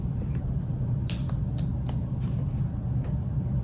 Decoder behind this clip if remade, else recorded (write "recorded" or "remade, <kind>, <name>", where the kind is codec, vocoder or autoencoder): recorded